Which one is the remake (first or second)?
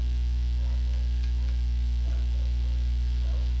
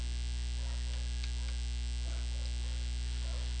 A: first